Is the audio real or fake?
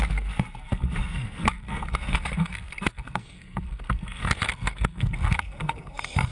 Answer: fake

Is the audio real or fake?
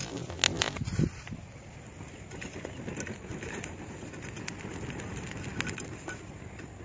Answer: real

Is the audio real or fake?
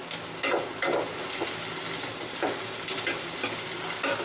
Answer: real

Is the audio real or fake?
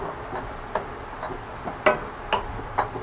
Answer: real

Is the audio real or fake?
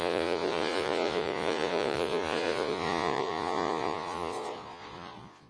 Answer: fake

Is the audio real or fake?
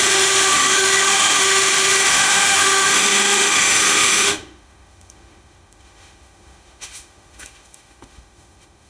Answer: fake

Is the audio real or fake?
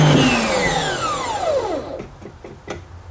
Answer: real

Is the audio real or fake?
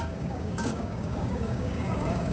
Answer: fake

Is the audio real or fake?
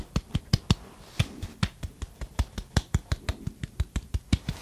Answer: fake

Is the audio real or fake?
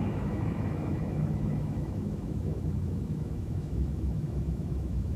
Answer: fake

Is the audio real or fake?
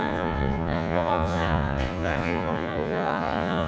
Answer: fake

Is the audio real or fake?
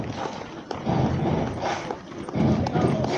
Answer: real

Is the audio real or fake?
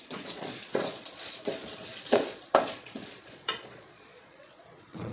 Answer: fake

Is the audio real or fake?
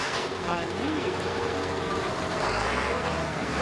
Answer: fake